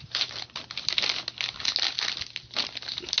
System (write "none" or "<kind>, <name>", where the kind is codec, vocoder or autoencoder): none